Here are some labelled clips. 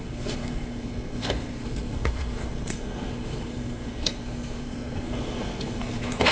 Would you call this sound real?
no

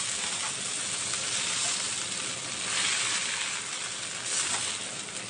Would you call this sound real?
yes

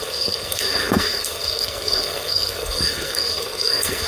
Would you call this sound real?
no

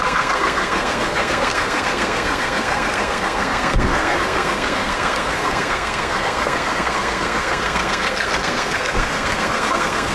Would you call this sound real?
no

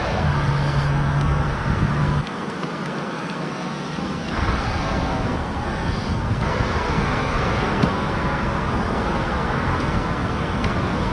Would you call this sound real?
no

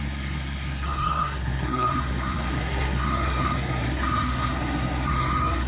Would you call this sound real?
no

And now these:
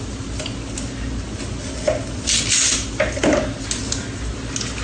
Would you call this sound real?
yes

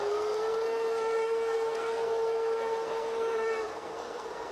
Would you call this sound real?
no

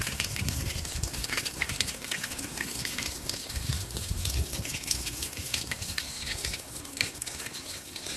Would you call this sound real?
no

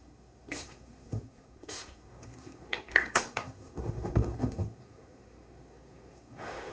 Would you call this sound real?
no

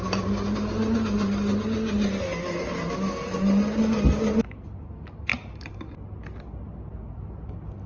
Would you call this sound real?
yes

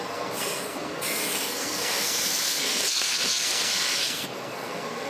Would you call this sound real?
no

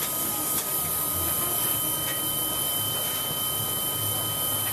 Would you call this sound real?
yes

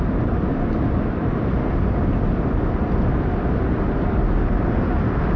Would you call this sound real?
yes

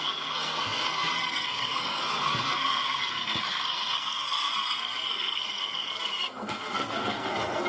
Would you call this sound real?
no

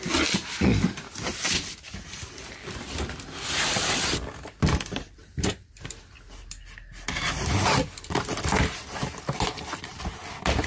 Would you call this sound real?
yes